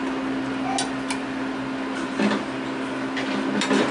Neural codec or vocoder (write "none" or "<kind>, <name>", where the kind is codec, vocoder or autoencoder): none